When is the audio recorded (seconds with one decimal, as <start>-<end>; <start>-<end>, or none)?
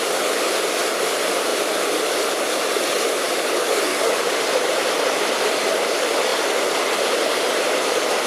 0.0-3.9; 4.4-8.3